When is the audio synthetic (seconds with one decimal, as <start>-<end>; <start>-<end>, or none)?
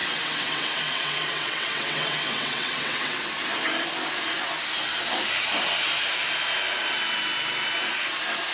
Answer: 0.0-3.2